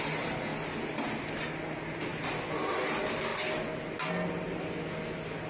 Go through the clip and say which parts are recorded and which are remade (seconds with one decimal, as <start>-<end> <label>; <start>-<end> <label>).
0.0-5.5 recorded